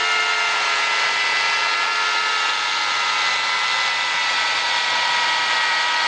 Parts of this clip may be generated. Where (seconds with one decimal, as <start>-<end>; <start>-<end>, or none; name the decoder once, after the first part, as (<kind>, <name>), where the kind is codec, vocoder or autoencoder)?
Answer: none

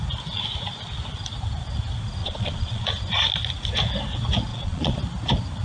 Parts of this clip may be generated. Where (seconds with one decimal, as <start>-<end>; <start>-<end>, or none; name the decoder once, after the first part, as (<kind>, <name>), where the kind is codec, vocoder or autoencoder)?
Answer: 2.2-2.9 (vocoder, Vocos); 4.5-5.0

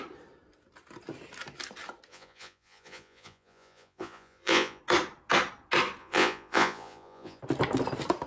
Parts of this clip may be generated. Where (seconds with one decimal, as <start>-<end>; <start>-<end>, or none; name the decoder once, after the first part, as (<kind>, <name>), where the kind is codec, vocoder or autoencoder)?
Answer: 2.1-4.8 (vocoder, Vocos); 6.0-7.4

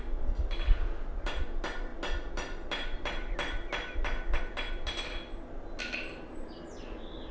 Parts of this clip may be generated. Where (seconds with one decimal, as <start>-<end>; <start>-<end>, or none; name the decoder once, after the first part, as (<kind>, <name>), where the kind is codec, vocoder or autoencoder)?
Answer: none